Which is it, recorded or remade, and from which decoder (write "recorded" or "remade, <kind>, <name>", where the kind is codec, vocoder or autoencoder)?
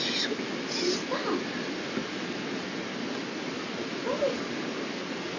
recorded